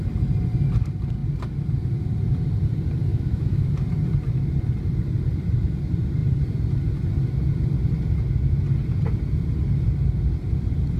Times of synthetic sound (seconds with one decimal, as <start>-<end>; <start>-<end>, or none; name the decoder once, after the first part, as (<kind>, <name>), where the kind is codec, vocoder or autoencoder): 3.1-3.7 (autoencoder, DAC-VAE)

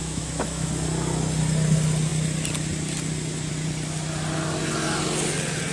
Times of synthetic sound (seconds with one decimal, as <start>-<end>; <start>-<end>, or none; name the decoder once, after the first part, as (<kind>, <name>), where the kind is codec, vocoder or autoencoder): 0.0-0.7 (autoencoder, DAC-VAE)

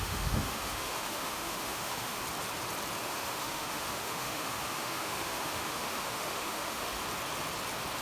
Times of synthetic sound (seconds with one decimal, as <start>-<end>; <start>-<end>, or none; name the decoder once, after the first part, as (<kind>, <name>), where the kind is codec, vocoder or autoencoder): 0.0-2.2 (autoencoder, DAC-VAE); 3.0-7.0

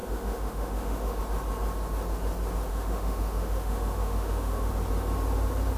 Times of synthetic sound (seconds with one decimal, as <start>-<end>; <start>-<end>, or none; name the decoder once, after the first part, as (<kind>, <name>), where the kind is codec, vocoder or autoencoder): 0.0-1.2 (autoencoder, DAC-VAE); 2.7-4.7

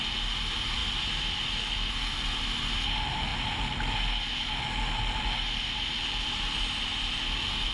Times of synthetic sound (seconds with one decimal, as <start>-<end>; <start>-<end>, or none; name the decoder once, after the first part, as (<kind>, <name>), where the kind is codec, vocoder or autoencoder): none

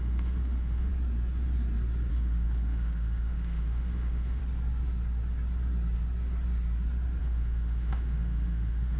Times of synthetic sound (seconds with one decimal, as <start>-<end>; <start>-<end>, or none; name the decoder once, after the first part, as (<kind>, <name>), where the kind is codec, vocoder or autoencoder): 0.0-0.9 (autoencoder, DAC-VAE); 2.1-4.4; 7.2-9.0

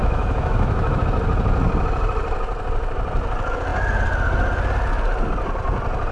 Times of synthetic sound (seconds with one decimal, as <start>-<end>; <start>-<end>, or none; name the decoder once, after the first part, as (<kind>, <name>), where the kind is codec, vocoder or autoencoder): 0.0-1.0 (autoencoder, DAC-VAE)

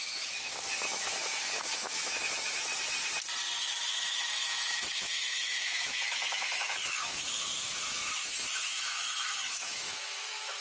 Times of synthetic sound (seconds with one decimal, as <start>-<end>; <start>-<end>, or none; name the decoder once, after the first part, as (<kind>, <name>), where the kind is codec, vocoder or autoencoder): 0.0-2.6 (autoencoder, DAC-VAE); 3.6-10.6